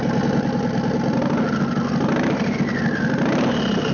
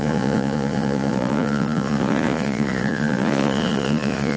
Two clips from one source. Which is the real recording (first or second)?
first